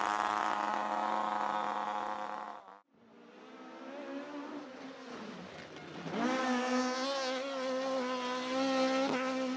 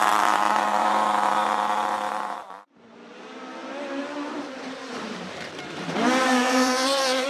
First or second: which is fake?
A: second